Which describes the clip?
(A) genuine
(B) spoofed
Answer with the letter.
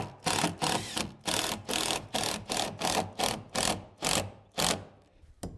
A